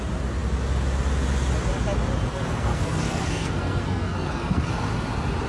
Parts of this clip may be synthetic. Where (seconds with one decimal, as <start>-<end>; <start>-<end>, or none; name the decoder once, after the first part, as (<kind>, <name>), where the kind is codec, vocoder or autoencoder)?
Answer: 2.3-4.7 (codec, SNAC)